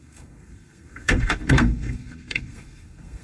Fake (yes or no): yes